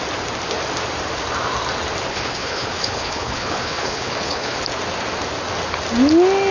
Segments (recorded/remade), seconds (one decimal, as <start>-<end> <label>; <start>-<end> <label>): 0.0-2.1 recorded; 2.1-4.6 remade; 4.6-6.5 recorded